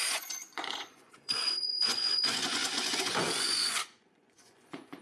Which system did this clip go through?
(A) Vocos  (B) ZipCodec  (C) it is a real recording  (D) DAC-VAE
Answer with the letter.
A